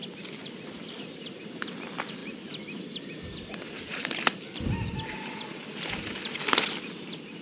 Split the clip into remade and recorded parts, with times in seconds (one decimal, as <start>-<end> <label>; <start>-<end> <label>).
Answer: 0.0-7.4 recorded